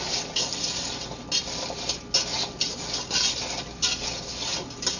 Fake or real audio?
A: real